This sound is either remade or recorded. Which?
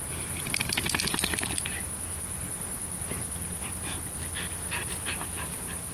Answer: recorded